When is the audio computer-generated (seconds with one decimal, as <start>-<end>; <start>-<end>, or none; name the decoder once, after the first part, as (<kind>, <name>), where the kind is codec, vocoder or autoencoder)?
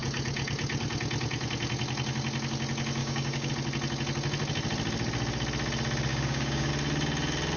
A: 3.0-3.5 (codec, DAC); 6.1-6.7